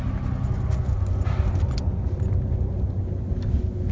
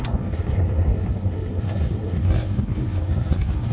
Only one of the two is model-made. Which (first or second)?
second